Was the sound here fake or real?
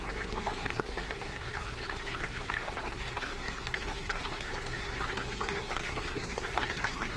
fake